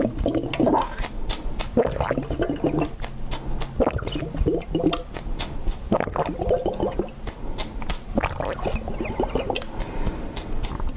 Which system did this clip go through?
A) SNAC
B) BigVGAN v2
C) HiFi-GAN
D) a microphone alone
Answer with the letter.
D